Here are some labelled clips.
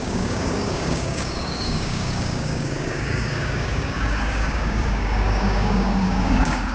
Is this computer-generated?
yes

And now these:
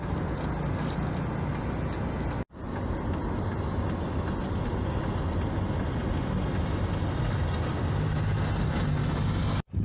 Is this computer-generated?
no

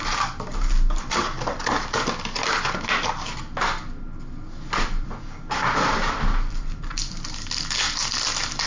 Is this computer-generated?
no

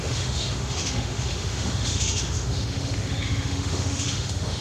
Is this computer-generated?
yes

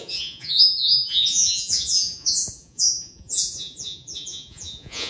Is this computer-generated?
yes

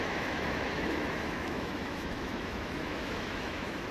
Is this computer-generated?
yes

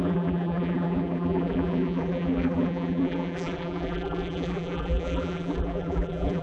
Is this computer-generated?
yes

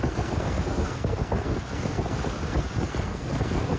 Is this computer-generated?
yes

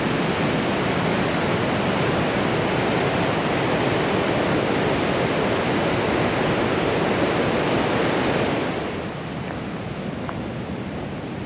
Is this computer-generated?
no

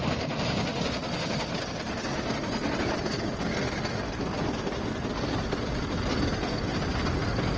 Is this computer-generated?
no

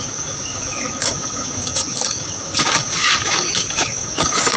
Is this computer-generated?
yes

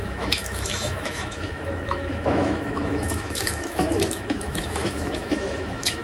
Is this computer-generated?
yes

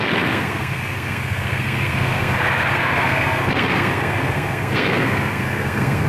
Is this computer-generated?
yes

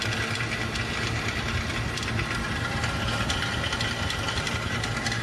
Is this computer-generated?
no